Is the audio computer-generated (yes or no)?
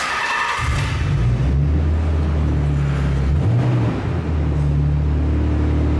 no